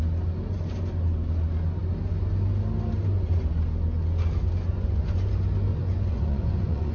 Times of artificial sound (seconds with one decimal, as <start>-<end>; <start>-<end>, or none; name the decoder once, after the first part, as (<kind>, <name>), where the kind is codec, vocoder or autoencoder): 4.7-5.3 (vocoder, Vocos); 5.7-6.9